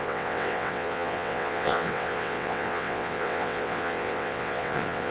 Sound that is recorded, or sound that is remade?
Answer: remade